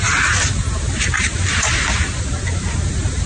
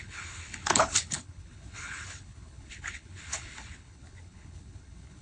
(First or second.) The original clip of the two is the first